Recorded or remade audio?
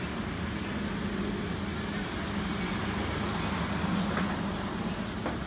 recorded